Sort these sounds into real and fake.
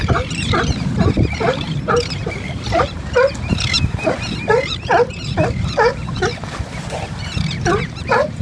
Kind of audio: fake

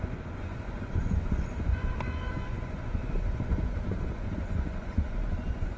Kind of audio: fake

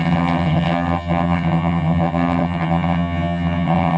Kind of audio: fake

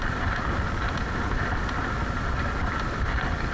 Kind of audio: real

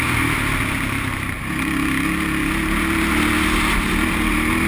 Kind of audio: real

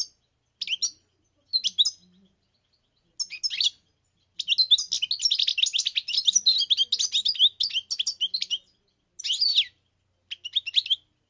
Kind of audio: real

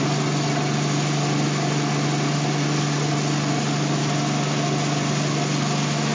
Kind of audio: real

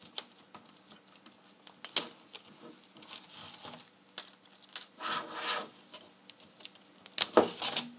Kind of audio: real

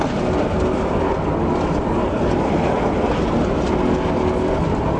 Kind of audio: real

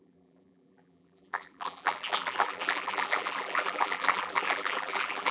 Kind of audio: fake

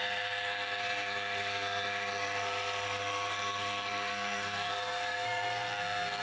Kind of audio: fake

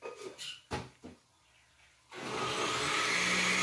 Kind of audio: real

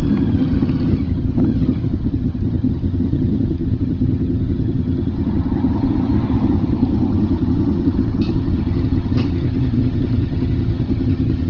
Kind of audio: fake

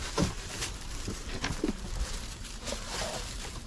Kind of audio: fake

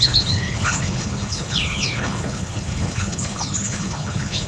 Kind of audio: fake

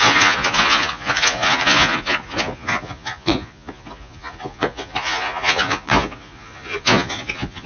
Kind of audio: fake